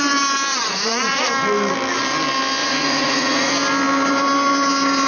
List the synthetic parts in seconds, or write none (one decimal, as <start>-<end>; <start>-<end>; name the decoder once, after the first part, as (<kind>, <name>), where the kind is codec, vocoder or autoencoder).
0.5-1.3 (vocoder, Vocos); 2.6-3.5